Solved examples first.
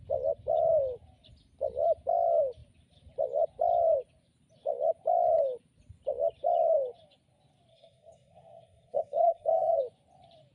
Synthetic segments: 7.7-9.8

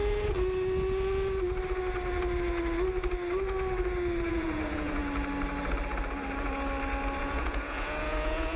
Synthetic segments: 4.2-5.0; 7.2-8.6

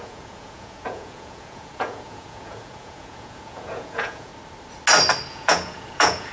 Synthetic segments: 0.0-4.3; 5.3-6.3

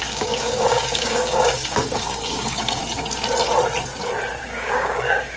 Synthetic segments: 0.0-2.8; 4.4-5.4

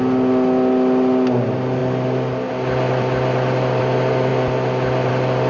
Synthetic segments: none

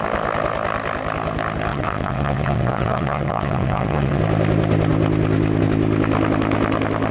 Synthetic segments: 1.7-4.2